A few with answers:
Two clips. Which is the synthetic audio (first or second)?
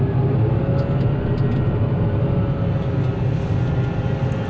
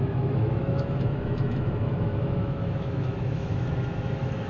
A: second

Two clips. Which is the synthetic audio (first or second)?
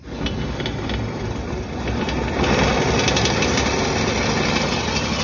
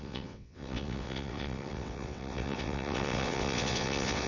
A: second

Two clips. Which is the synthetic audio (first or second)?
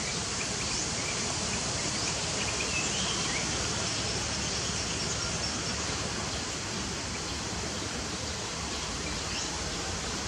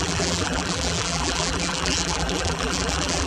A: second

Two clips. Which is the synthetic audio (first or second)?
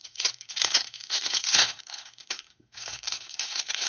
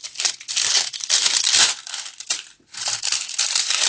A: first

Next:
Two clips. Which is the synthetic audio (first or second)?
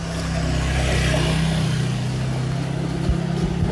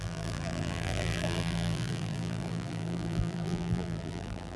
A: second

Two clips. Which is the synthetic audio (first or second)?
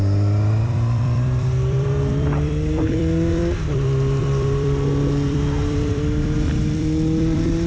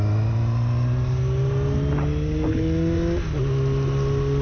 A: first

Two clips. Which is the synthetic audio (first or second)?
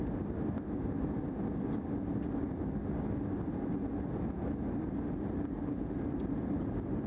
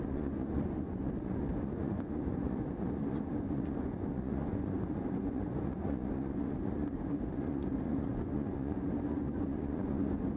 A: second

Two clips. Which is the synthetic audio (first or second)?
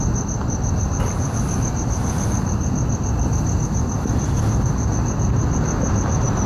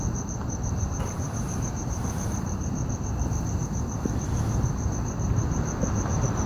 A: second